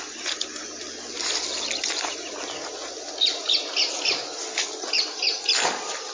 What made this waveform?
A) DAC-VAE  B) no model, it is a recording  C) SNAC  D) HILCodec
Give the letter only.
B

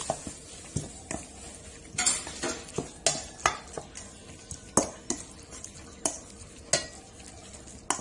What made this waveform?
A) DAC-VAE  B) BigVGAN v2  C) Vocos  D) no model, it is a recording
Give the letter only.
D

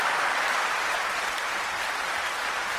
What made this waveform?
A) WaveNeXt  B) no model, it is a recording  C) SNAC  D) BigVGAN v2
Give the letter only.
B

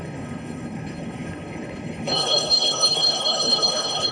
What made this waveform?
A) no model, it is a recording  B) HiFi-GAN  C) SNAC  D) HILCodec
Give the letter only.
D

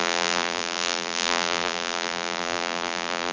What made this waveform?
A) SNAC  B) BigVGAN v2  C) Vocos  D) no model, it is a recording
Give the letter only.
B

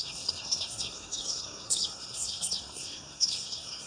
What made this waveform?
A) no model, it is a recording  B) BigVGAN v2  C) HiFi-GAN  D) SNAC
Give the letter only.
D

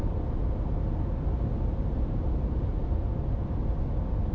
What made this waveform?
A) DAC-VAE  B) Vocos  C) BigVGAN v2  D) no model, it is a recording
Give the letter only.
D